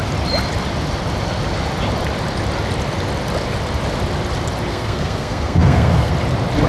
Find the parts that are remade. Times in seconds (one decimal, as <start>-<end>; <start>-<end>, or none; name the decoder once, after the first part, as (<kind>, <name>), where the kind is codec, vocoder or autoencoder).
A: 4.7-6.1 (codec, SNAC)